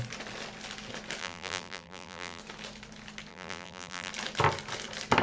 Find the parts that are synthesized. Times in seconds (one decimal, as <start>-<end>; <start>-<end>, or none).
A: 1.2-2.4; 3.3-4.1

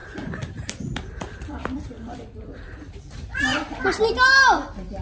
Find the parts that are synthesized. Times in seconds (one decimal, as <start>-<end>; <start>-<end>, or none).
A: 0.0-3.0; 3.5-4.0

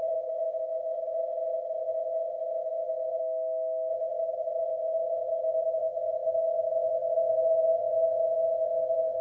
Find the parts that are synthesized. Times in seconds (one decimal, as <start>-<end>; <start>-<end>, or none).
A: 0.0-3.2; 3.9-9.2

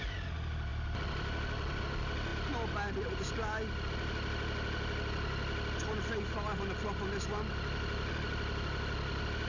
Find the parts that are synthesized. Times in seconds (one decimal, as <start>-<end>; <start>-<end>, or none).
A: none

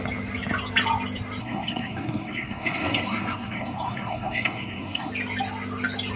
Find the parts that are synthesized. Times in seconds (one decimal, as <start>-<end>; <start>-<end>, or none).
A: 1.4-5.1

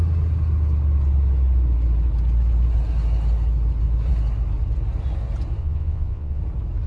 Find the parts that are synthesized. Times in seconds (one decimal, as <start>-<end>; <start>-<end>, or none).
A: 5.6-6.4

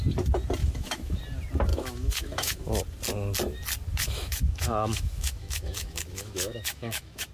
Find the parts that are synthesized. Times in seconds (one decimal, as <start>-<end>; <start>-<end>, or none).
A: 0.6-1.2; 1.7-2.8; 3.9-7.3

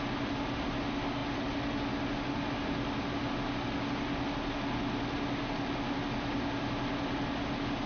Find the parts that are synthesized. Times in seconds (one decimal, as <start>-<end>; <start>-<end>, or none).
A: none